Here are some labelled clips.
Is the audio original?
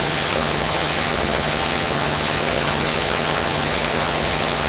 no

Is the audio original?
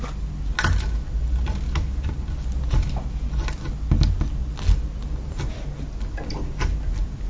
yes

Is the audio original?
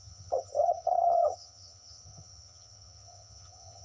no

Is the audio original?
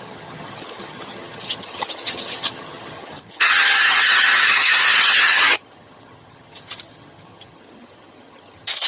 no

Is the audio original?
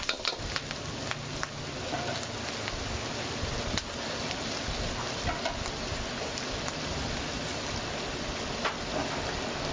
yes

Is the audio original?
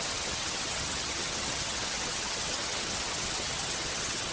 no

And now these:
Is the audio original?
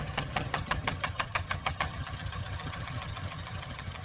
no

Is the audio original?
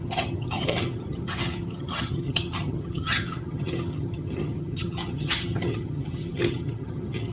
no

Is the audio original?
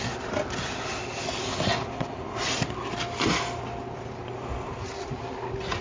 yes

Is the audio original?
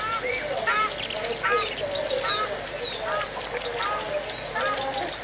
yes